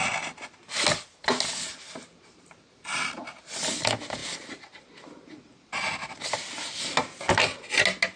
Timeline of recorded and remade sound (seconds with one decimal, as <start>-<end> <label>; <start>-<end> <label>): 0.0-8.2 recorded